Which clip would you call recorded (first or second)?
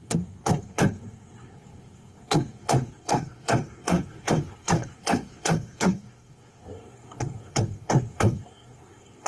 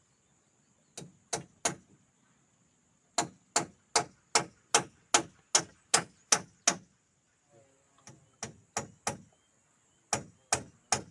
second